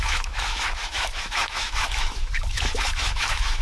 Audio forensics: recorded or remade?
remade